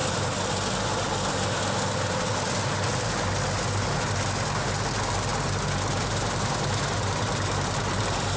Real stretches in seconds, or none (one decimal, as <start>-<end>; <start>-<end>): 0.0-8.4